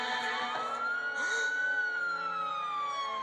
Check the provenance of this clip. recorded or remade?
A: recorded